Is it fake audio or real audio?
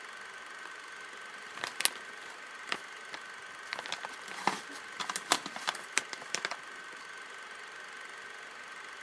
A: real